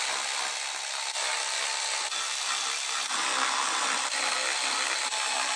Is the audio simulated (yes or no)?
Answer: no